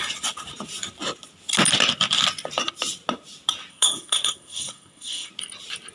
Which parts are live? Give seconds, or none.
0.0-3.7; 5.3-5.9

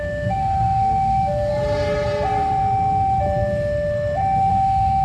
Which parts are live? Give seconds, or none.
1.5-4.5

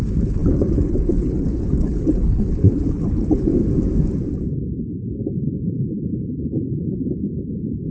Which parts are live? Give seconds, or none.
3.5-7.9

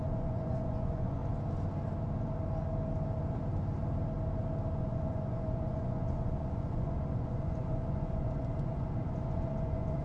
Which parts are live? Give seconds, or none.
1.2-4.8

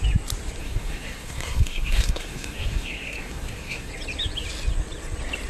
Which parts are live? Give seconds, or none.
0.0-0.6; 3.9-5.5

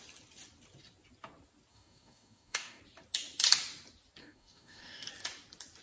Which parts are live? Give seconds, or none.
0.0-1.7; 2.8-4.2; 5.1-5.8

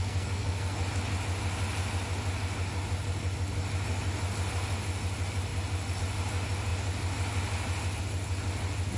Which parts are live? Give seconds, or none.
0.8-9.0

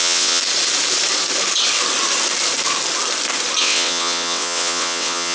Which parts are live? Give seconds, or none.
0.4-3.6